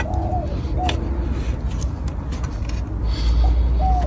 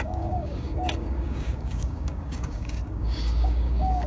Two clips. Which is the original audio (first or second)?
first